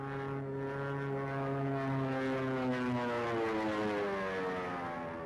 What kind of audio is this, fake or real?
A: real